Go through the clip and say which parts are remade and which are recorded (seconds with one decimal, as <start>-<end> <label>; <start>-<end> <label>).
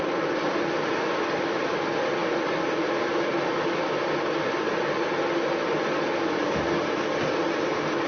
0.0-8.1 recorded